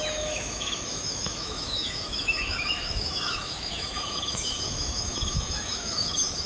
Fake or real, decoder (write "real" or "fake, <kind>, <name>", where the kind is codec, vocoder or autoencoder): fake, autoencoder, DAC-VAE